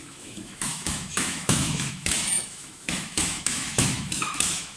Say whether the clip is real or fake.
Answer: fake